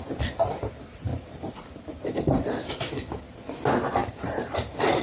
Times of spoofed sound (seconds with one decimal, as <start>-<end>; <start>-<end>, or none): 1.1-2.7; 4.0-5.0